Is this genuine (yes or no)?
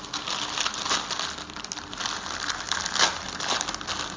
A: yes